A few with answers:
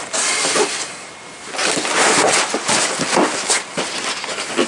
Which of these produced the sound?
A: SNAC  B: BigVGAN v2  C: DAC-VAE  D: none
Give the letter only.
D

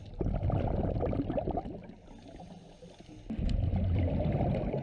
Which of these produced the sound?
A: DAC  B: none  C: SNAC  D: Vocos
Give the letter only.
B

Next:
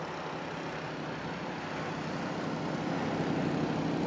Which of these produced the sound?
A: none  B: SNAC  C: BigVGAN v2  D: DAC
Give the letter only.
A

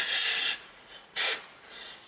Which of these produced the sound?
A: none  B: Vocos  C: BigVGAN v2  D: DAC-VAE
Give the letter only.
B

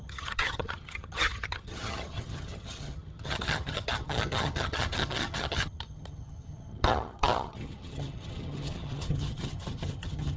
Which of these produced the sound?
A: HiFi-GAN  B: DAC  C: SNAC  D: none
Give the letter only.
A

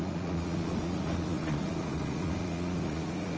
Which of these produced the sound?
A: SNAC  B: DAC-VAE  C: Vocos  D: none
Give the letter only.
C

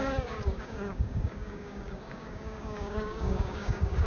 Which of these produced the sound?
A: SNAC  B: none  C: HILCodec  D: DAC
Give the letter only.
D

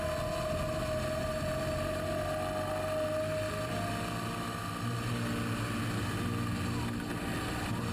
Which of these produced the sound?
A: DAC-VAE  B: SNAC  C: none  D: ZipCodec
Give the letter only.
C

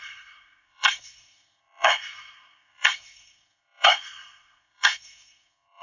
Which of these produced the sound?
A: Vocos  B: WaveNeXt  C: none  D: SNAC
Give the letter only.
D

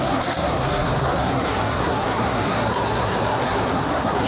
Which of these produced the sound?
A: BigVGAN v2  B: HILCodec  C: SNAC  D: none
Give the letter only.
C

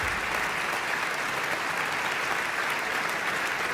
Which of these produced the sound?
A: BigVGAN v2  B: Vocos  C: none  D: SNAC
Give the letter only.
C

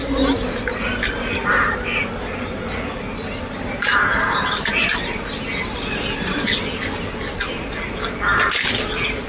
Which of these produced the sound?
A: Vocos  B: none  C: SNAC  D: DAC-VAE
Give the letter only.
B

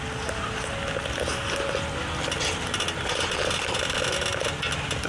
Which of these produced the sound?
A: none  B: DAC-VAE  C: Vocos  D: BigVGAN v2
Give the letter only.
A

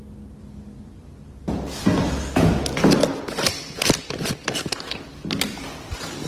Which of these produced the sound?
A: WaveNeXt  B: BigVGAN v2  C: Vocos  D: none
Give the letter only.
D